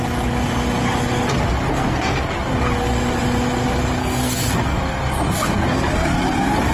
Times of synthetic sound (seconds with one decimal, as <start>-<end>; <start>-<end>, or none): 1.7-2.3; 4.0-4.8